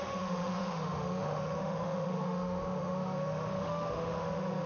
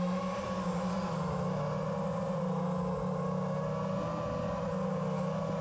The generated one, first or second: first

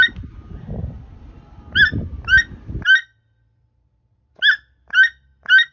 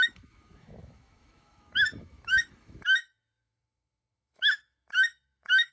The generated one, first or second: second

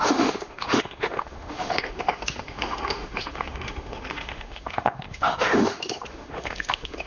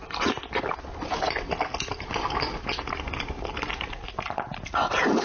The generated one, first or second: first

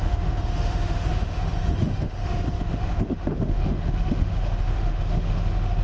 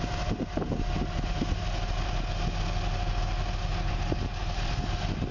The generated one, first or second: first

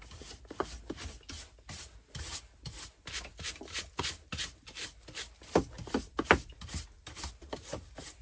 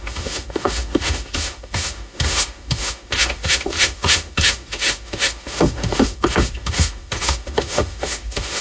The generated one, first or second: second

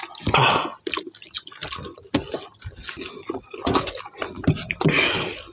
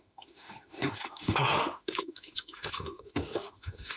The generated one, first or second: second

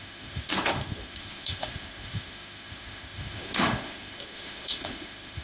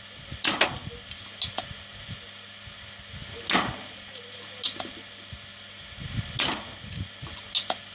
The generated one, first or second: first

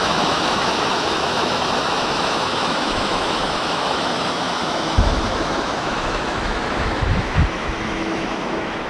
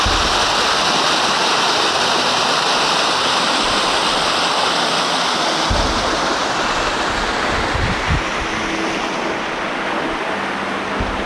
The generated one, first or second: first